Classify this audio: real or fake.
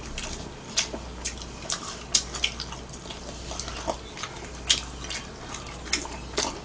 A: real